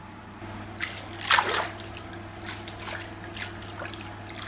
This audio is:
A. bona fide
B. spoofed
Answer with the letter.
A